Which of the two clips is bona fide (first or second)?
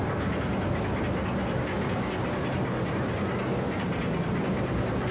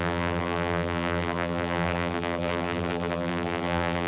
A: first